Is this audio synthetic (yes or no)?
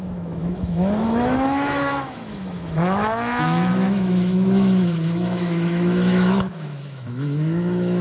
yes